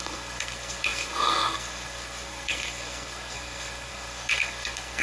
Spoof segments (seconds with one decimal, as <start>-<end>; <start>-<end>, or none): 0.0-5.0